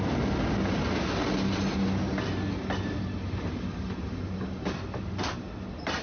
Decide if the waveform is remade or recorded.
recorded